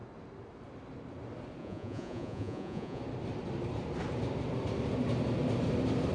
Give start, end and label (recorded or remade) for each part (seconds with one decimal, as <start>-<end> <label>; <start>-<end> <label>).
0.0-1.6 recorded; 1.6-3.0 remade; 3.0-6.1 recorded